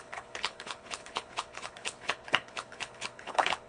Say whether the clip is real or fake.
fake